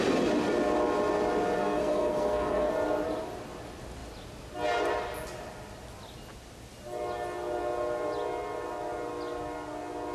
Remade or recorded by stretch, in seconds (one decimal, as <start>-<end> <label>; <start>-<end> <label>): 0.0-1.6 recorded; 1.6-2.7 remade; 2.7-10.1 recorded